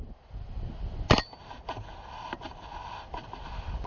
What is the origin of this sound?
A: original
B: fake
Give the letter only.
A